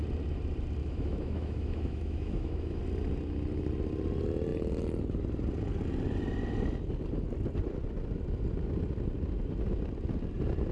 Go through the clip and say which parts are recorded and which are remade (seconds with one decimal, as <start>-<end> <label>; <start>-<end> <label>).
0.0-0.8 recorded; 0.8-2.8 remade; 2.8-10.7 recorded

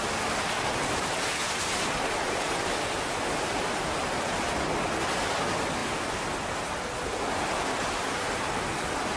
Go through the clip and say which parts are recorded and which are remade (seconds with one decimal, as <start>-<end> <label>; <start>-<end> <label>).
0.0-9.2 recorded

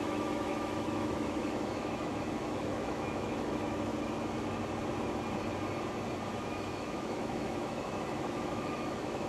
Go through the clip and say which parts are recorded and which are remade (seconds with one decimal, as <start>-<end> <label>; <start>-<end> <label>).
0.0-3.9 remade; 3.9-6.5 recorded; 6.5-9.3 remade

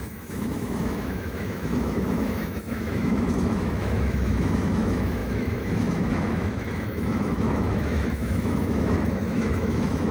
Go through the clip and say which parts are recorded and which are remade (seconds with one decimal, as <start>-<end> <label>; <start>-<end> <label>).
0.0-10.1 remade

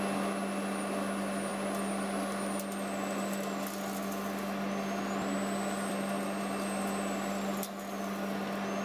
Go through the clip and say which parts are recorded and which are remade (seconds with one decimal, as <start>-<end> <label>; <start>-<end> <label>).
0.0-8.8 recorded